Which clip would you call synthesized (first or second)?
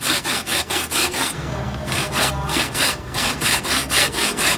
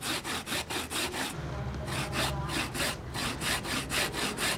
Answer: first